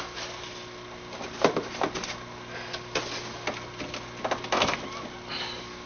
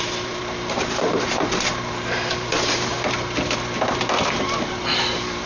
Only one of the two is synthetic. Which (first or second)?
second